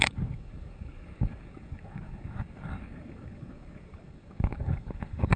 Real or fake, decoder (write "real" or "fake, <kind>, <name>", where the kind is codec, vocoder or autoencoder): fake, codec, DAC